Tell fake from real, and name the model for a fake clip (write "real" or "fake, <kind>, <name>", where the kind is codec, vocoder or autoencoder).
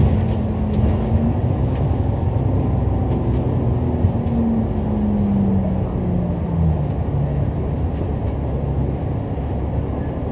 real